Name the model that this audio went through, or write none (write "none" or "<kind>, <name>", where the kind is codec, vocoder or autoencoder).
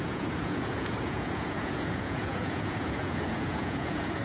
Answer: vocoder, Vocos